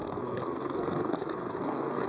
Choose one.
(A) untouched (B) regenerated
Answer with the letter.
B